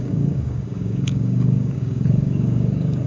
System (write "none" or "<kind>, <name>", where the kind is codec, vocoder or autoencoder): codec, DAC